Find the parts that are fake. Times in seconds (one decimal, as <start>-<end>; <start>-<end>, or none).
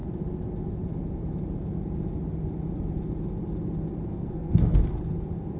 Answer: 4.1-4.8